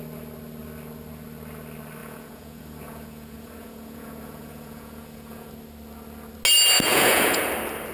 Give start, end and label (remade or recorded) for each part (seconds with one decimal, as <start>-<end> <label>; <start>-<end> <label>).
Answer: 0.0-2.0 recorded; 2.0-5.5 remade; 5.5-6.9 recorded; 6.9-7.5 remade; 7.5-7.9 recorded